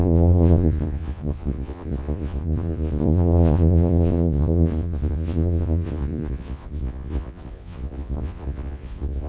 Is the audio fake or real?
fake